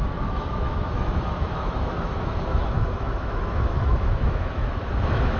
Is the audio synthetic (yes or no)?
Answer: yes